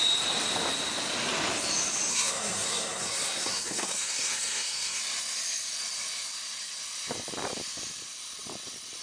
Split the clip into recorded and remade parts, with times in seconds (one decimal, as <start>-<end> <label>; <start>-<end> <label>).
0.0-2.1 recorded; 2.1-5.0 remade; 5.0-9.0 recorded